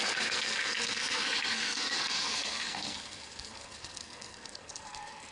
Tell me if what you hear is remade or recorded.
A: remade